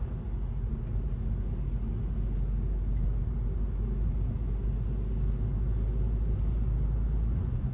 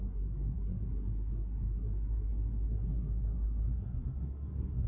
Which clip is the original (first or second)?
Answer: first